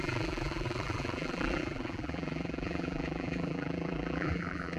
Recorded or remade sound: remade